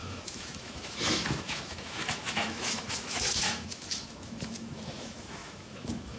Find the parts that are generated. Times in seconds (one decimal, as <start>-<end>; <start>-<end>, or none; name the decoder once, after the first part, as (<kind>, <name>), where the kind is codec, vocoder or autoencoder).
0.0-6.2 (autoencoder, DAC-VAE)